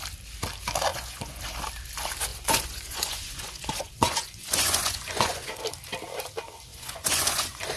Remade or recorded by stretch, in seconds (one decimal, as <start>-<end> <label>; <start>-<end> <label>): 0.0-0.9 recorded; 0.9-1.4 remade; 1.4-2.3 recorded; 2.3-5.6 remade; 5.6-6.7 recorded; 6.7-7.8 remade